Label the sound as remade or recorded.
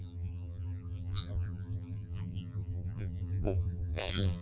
remade